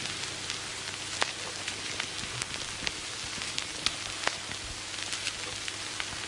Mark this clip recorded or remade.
recorded